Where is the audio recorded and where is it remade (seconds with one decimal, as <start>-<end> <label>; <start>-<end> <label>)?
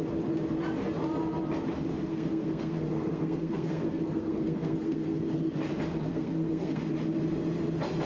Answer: 0.0-2.1 recorded; 2.1-5.2 remade; 5.2-6.1 recorded; 6.1-6.8 remade; 6.8-8.1 recorded